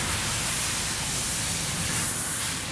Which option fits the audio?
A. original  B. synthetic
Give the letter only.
A